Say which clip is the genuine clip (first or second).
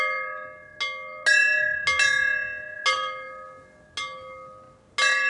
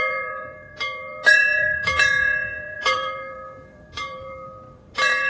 first